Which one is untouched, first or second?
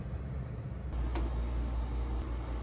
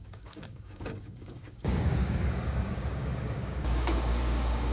first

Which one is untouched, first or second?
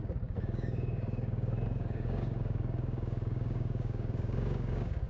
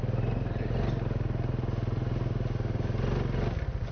second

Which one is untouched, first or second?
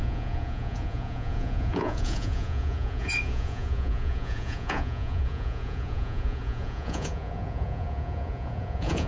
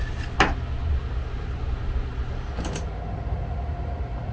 second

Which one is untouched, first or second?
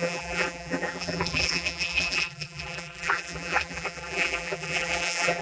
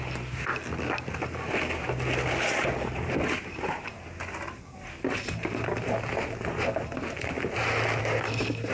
second